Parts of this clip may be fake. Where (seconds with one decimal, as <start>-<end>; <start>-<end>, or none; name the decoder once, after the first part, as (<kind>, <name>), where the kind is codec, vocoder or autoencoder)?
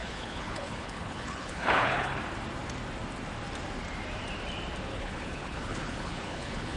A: 0.0-2.2 (codec, HILCodec); 4.9-6.8